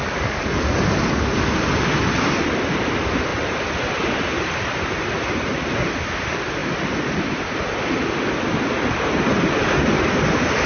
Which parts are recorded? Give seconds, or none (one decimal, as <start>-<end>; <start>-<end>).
0.7-10.7